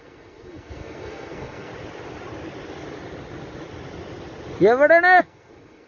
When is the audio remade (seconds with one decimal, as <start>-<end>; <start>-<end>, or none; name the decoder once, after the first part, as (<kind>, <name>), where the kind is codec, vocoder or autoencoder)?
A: 0.0-1.7 (codec, SNAC); 5.2-5.9